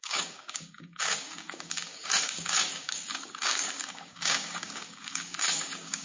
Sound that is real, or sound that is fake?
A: fake